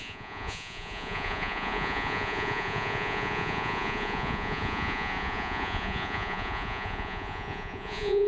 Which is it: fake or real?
fake